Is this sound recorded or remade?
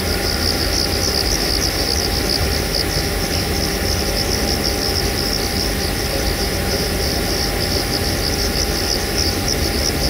recorded